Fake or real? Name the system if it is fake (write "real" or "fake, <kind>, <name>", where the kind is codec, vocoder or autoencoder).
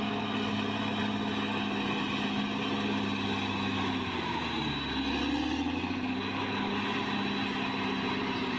real